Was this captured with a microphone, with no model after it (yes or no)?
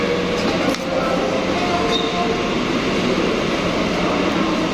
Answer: yes